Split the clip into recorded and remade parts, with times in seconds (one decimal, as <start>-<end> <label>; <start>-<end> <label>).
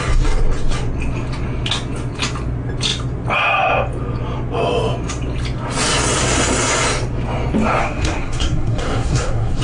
0.0-7.8 recorded; 7.8-9.6 remade